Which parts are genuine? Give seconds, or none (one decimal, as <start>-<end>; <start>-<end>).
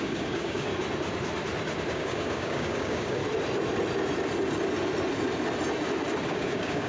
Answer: 0.7-1.9; 3.2-6.3